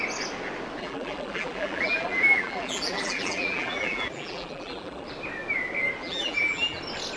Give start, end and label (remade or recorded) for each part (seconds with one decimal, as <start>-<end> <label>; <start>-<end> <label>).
0.0-0.8 recorded; 0.8-5.1 remade; 5.1-6.0 recorded; 6.0-6.8 remade; 6.8-7.2 recorded